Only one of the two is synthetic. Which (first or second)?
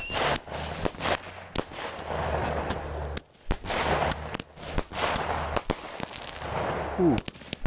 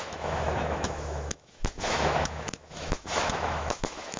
second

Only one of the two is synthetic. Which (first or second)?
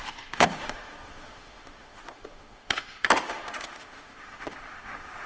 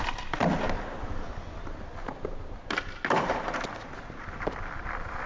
first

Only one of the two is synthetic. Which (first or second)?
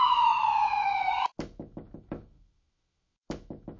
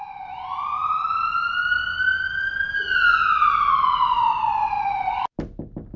first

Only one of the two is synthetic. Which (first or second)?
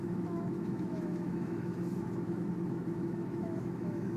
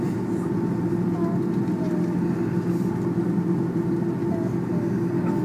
first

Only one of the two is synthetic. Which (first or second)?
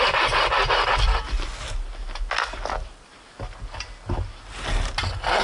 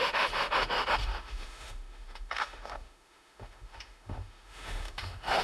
second